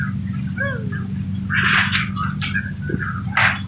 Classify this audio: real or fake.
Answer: real